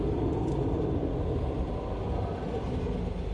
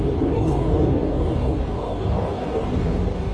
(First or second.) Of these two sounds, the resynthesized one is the second